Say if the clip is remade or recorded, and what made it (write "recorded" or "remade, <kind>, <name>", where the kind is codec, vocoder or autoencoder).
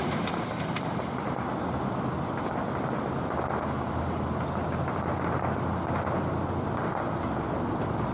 recorded